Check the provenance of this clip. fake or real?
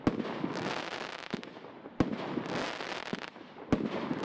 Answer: real